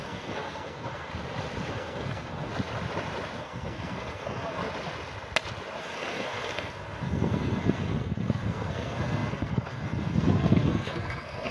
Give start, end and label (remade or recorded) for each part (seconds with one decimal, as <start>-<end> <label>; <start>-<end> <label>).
0.0-1.1 remade; 1.1-1.7 recorded; 1.7-2.5 remade; 2.5-3.4 recorded; 3.4-4.6 remade; 4.6-5.8 recorded; 5.8-11.5 remade